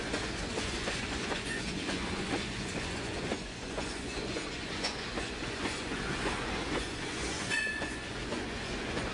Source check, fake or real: fake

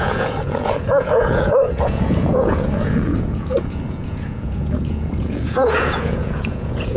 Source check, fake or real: fake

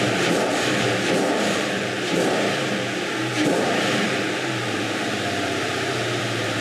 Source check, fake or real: fake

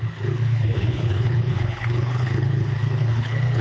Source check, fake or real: fake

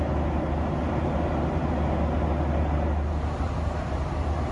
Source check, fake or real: real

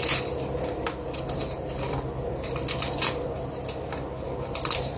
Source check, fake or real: real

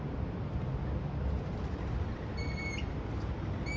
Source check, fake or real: real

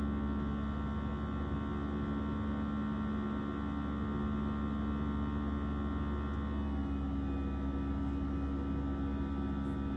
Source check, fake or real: real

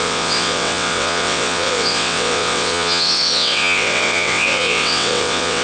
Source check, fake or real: fake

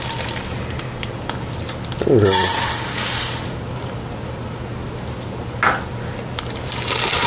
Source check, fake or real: real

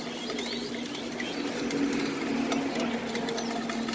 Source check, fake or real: real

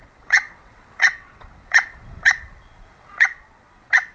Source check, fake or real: fake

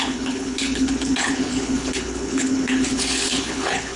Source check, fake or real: fake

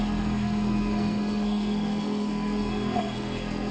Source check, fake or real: fake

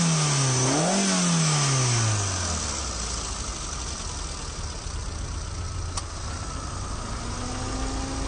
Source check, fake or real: real